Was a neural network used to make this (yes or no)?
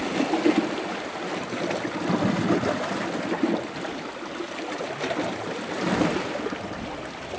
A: no